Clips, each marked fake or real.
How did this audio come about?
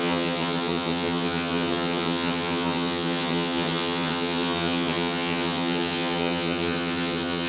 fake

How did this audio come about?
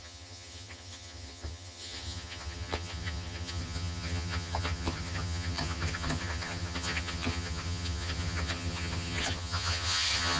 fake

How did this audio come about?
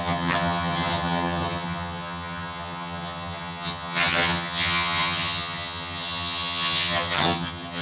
fake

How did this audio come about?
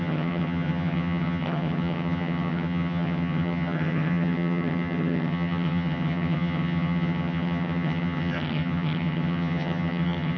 fake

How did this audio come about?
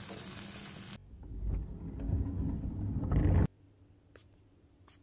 real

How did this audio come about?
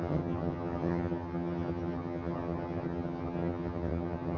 fake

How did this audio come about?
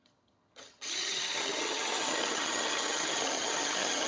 fake